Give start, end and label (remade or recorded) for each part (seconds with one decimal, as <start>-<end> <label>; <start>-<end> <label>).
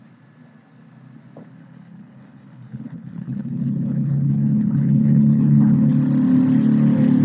0.0-1.6 recorded; 1.6-5.9 remade; 5.9-7.2 recorded